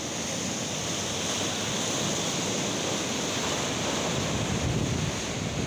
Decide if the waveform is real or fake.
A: real